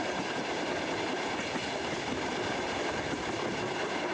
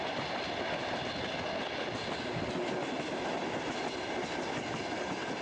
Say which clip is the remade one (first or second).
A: first